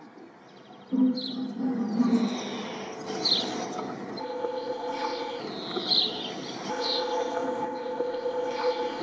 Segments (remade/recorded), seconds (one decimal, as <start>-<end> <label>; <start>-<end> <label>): 0.0-4.2 recorded; 4.2-5.4 remade; 5.4-6.7 recorded; 6.7-9.0 remade

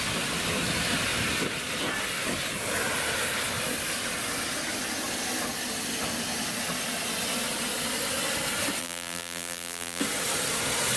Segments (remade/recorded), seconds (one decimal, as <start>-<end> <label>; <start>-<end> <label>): 0.0-8.8 recorded; 8.8-10.0 remade; 10.0-11.0 recorded

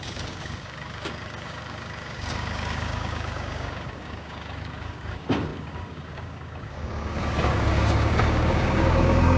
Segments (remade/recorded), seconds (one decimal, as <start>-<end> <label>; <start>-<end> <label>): 0.0-9.4 remade

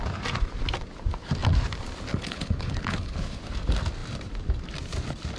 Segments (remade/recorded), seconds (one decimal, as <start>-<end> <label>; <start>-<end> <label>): 0.0-2.1 recorded; 2.1-3.4 remade; 3.4-5.4 recorded